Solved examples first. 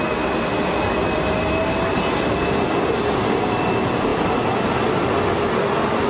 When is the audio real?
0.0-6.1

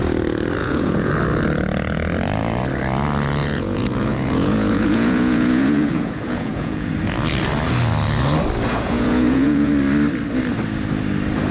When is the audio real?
0.0-0.6; 1.1-3.4; 6.9-8.7; 9.7-11.5

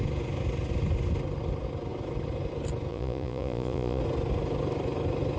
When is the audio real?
0.0-2.9; 4.0-5.4

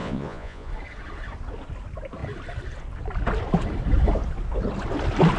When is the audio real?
0.7-5.4

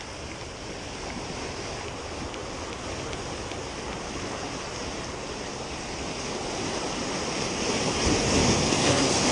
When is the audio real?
0.0-8.4

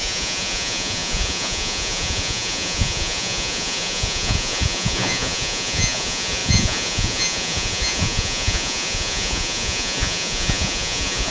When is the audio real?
none